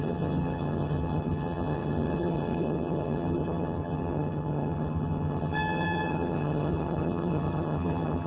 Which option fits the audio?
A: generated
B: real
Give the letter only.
A